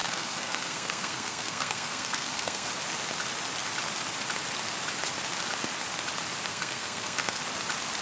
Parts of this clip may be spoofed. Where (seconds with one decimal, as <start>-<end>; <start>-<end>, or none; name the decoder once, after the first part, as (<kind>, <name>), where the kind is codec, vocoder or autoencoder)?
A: 0.0-2.7 (codec, SNAC); 6.5-7.4